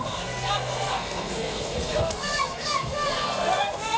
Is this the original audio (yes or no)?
no